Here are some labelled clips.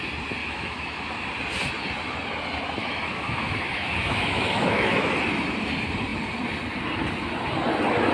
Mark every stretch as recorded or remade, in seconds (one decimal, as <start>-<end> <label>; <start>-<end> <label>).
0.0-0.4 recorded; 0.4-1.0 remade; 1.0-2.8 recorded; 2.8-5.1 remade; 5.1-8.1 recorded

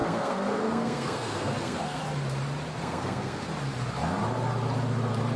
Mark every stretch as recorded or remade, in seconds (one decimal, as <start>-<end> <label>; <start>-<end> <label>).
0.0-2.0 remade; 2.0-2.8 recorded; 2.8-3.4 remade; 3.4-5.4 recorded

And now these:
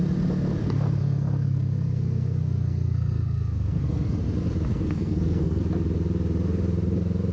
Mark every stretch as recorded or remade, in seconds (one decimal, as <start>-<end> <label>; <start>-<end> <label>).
0.0-1.0 recorded; 1.0-4.2 remade; 4.2-4.7 recorded; 4.7-5.6 remade; 5.6-7.3 recorded